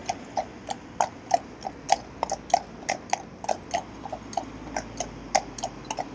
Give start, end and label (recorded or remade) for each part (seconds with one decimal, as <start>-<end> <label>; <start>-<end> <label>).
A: 0.0-6.1 recorded